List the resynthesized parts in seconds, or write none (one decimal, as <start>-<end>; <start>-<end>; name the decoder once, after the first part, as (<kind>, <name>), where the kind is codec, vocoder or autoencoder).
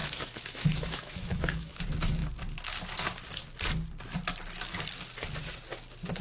0.0-1.8 (autoencoder, DAC-VAE)